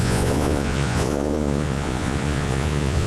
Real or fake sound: fake